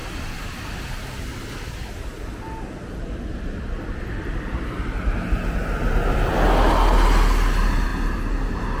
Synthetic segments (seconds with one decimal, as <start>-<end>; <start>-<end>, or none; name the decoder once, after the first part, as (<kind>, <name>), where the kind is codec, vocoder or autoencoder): none